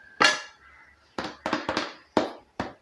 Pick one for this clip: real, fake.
real